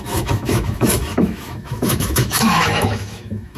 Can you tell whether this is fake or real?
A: fake